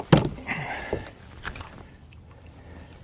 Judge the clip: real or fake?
real